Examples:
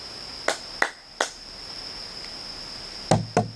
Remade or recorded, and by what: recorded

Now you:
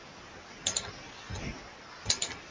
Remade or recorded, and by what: recorded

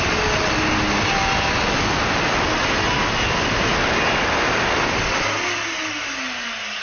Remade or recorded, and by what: recorded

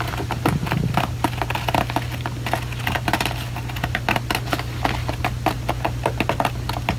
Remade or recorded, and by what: recorded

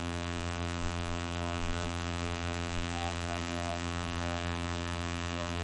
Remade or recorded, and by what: remade, vocoder, BigVGAN v2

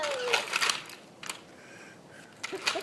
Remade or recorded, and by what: recorded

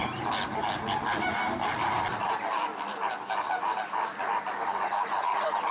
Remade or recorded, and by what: recorded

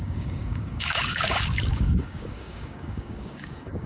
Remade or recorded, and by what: remade, codec, DAC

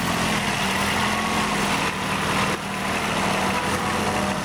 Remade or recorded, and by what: recorded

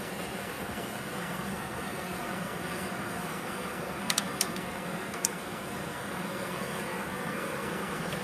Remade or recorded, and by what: remade, codec, SNAC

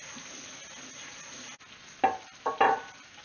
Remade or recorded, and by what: recorded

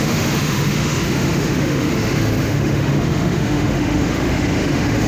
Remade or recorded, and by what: remade, autoencoder, DAC-VAE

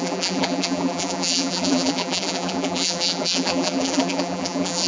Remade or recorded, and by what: remade, vocoder, BigVGAN v2